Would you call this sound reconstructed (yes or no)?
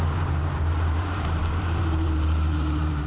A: yes